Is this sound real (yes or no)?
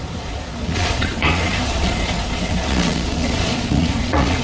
no